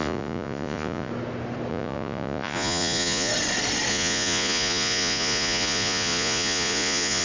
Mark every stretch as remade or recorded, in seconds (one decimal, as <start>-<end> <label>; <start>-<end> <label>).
0.0-1.1 remade; 1.1-1.7 recorded; 1.7-3.3 remade; 3.3-3.9 recorded; 3.9-7.2 remade